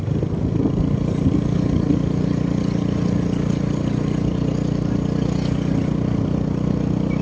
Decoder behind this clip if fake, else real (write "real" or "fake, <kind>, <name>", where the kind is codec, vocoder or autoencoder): real